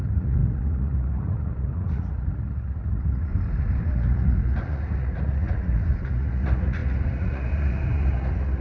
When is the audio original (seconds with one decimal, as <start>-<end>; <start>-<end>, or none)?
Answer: 3.3-3.9